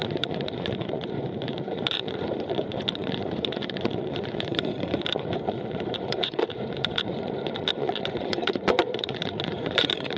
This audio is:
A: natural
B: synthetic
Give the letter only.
B